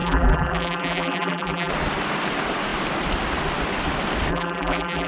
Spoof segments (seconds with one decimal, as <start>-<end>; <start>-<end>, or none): 0.0-1.7; 4.3-5.1